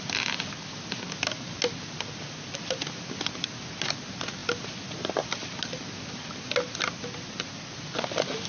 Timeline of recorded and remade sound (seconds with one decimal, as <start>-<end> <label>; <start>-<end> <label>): 0.0-8.5 recorded